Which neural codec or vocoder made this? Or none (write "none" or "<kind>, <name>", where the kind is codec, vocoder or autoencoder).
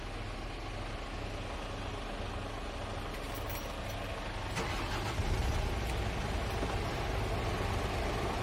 none